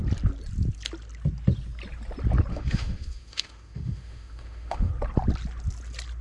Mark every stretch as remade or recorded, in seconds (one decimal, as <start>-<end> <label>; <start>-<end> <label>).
0.0-2.5 recorded; 2.5-4.9 remade; 4.9-6.2 recorded